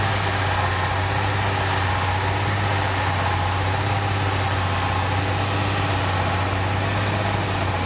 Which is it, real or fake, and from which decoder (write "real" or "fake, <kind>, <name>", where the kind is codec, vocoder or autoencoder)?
real